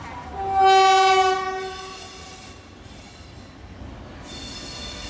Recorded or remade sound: recorded